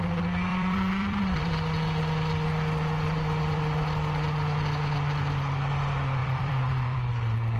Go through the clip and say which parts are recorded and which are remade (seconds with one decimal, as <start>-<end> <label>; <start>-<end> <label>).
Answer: 0.0-0.5 recorded; 0.5-1.2 remade; 1.2-6.2 recorded; 6.2-7.1 remade; 7.1-7.6 recorded

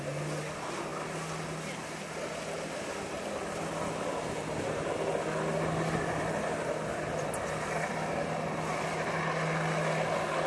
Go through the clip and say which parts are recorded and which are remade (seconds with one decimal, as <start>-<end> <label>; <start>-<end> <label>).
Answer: 0.0-10.5 recorded

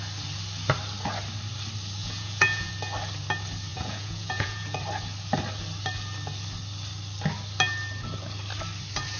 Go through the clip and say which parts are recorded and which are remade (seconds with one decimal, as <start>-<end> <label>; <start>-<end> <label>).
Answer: 0.0-2.0 recorded; 2.0-2.7 remade; 2.7-3.7 recorded; 3.7-4.8 remade; 4.8-9.2 recorded